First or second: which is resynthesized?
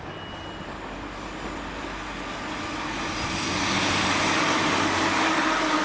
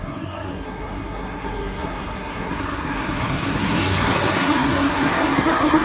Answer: second